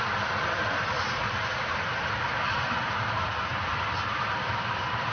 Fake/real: fake